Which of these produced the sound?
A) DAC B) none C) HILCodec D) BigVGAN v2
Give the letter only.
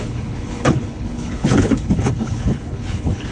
C